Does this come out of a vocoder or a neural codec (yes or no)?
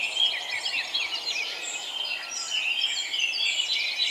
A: no